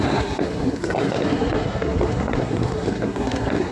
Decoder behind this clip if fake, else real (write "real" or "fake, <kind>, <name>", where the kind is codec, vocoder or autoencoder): fake, codec, SNAC